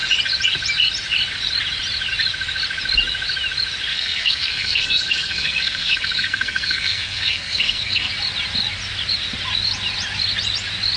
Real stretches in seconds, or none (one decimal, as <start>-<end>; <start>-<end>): 0.0-3.9; 8.1-11.0